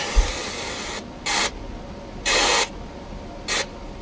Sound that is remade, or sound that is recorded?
recorded